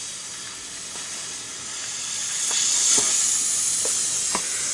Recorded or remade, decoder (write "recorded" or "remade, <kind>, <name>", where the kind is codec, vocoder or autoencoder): recorded